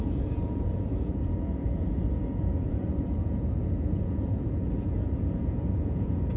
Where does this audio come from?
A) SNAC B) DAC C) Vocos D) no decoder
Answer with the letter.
C